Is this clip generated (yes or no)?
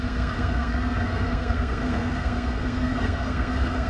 yes